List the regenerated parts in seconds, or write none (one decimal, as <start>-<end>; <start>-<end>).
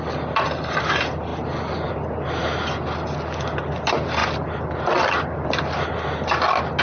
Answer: none